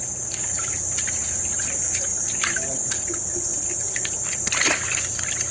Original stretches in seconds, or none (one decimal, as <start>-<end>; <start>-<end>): 0.0-5.5